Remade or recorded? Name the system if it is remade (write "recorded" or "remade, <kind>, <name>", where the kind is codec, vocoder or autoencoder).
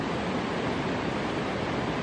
recorded